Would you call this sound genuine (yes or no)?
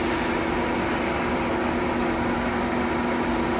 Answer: yes